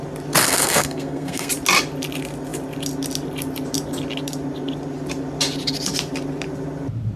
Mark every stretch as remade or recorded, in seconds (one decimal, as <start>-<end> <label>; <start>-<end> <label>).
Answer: 0.0-0.4 recorded; 0.4-1.5 remade; 1.5-7.2 recorded